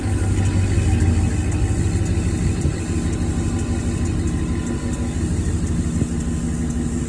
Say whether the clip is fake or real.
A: real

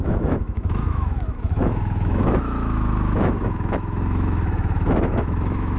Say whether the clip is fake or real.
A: fake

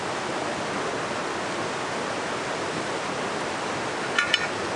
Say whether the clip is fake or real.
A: real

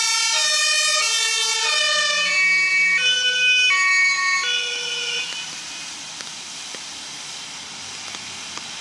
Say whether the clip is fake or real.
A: real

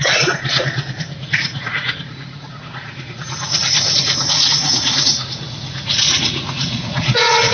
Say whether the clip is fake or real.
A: fake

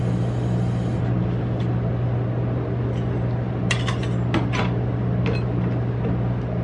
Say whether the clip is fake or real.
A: real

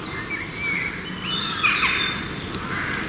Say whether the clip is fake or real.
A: real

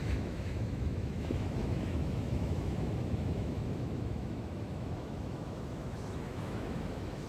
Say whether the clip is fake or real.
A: fake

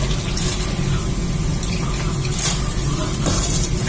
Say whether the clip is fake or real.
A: real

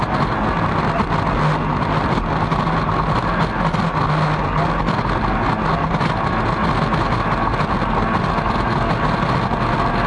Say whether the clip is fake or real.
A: real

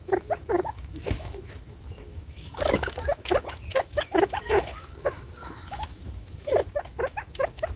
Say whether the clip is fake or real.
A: fake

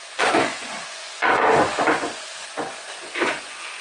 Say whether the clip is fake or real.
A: fake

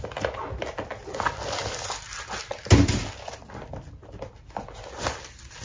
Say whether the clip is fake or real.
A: real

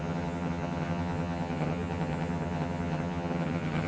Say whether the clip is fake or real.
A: fake